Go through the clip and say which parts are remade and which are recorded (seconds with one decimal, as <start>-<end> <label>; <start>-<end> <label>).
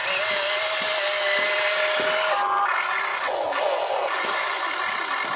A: 0.0-3.1 recorded; 3.1-4.7 remade; 4.7-5.4 recorded